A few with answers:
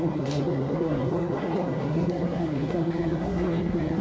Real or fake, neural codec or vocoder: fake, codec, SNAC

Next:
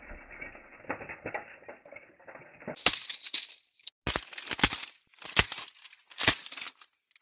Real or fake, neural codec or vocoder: real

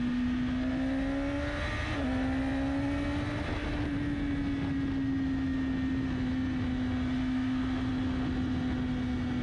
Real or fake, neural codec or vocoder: real